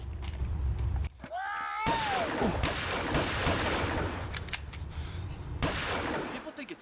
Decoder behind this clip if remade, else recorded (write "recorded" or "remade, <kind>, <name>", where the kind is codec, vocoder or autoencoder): remade, vocoder, BigVGAN v2